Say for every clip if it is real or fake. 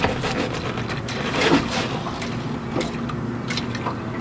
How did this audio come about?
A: real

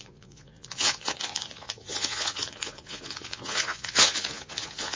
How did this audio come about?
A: fake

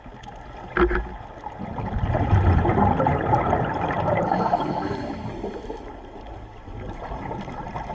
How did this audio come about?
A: real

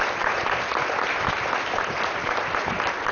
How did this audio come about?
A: real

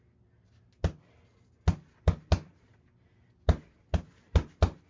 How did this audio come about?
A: real